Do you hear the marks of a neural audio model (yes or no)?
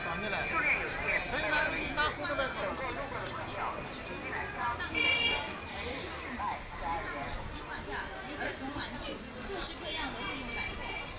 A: no